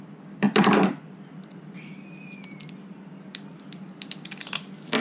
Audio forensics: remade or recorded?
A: recorded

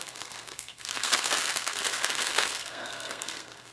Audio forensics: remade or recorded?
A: remade